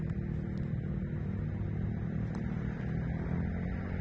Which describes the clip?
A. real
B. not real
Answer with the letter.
A